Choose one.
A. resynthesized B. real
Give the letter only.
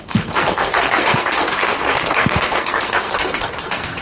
A